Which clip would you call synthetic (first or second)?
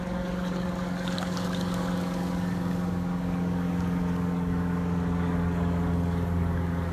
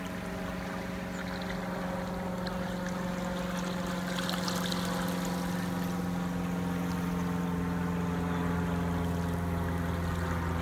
first